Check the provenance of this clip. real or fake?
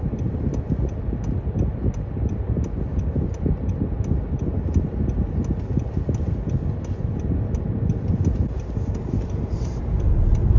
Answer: real